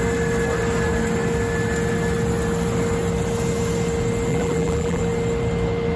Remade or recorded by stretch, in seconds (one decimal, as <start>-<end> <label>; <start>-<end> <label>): 0.0-4.3 recorded; 4.3-5.0 remade; 5.0-6.0 recorded